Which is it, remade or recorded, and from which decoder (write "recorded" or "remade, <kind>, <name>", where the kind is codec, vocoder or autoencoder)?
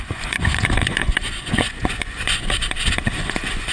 remade, vocoder, Vocos